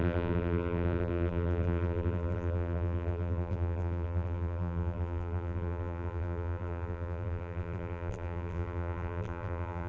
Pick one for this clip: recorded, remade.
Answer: remade